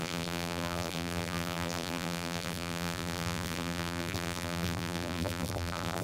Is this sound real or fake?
fake